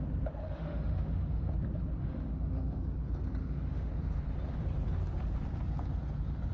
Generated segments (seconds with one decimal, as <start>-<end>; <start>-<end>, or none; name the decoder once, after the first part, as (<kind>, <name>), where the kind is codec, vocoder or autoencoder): 0.4-1.5 (autoencoder, DAC-VAE); 2.0-2.8; 3.4-3.9